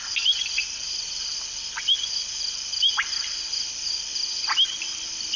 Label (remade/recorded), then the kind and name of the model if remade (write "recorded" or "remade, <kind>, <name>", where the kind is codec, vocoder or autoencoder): recorded